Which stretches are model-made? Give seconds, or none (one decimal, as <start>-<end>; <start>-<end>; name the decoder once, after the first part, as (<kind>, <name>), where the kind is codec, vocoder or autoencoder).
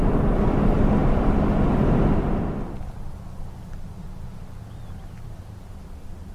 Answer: none